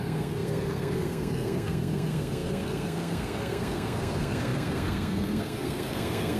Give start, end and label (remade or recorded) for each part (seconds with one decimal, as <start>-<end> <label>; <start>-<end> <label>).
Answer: 0.0-6.4 remade